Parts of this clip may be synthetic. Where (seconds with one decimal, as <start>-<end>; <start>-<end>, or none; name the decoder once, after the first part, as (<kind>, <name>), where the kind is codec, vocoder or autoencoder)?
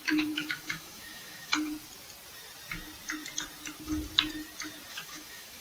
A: 0.0-1.5 (autoencoder, DAC-VAE); 4.9-5.6